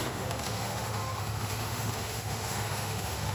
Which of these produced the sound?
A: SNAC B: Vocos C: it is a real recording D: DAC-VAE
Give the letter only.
D